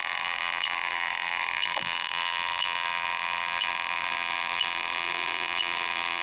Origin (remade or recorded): remade